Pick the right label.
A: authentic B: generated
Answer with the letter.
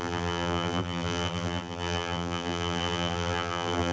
B